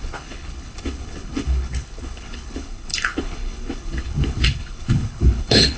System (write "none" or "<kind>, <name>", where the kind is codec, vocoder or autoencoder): codec, HILCodec